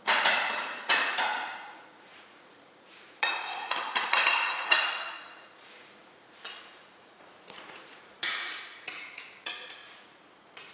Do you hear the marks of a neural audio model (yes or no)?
yes